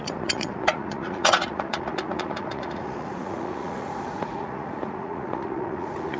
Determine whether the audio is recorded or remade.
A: remade